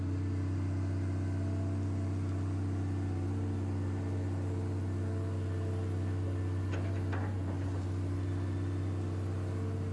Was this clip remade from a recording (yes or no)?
no